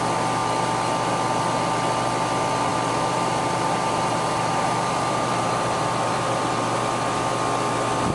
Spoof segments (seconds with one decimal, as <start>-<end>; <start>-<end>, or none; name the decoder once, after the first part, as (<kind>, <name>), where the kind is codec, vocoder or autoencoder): 2.7-6.5 (vocoder, BigVGAN v2)